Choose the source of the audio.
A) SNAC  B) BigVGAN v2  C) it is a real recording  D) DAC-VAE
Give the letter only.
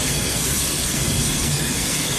A